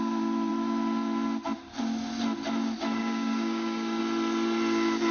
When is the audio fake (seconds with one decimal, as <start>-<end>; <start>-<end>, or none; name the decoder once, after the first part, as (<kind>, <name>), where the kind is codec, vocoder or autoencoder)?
3.0-4.0 (codec, DAC)